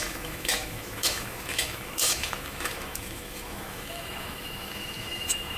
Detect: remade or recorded remade